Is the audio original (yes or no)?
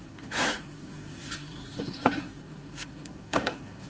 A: no